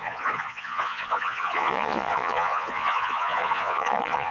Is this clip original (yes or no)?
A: no